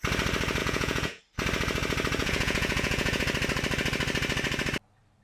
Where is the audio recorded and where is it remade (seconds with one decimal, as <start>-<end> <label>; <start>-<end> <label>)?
0.0-0.6 recorded; 0.6-1.2 remade; 1.2-2.2 recorded; 2.2-3.2 remade; 3.2-5.2 recorded